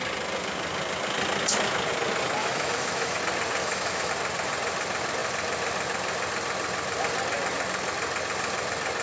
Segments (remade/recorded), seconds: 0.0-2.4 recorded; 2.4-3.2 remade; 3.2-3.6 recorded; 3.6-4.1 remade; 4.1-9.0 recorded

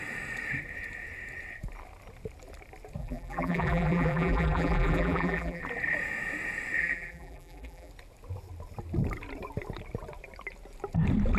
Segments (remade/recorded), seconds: 0.0-3.0 recorded; 3.0-5.6 remade; 5.6-6.8 recorded; 6.8-7.9 remade; 7.9-11.4 recorded

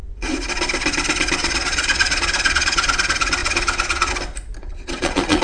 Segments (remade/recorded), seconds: 0.0-1.4 recorded; 1.4-2.9 remade; 2.9-3.4 recorded; 3.4-4.1 remade; 4.1-4.6 recorded; 4.6-5.4 remade

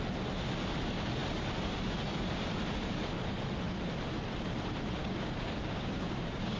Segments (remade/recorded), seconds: 0.0-5.0 recorded; 5.0-6.6 remade

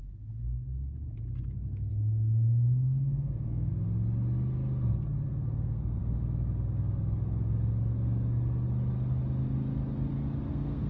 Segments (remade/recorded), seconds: 0.0-1.9 recorded; 1.9-3.7 remade; 3.7-5.3 recorded; 5.3-6.0 remade; 6.0-10.5 recorded; 10.5-10.9 remade